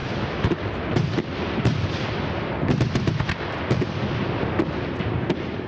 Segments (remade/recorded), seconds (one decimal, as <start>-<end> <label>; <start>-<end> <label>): 0.0-3.4 remade; 3.4-5.7 recorded

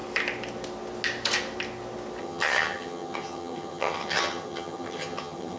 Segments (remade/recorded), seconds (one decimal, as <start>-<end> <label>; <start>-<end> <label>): 0.0-2.2 recorded; 2.2-5.6 remade

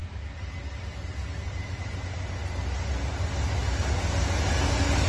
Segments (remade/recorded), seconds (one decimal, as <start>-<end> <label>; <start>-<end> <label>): 0.0-5.1 recorded